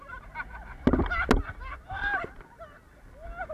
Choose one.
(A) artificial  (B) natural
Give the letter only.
B